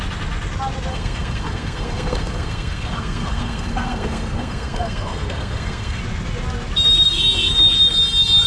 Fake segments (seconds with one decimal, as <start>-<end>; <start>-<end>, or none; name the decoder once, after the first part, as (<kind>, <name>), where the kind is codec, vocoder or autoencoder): 0.9-6.0 (codec, SNAC)